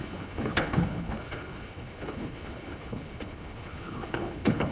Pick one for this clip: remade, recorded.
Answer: remade